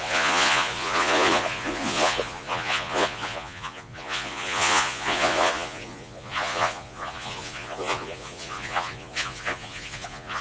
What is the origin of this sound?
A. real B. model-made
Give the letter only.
B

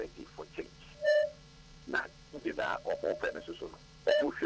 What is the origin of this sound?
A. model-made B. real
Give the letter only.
A